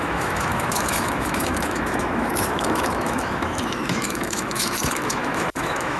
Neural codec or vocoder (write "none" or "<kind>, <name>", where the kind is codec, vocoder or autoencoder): autoencoder, DAC-VAE